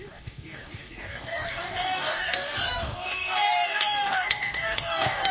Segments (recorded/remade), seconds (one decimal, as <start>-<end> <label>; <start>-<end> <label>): 0.0-5.3 remade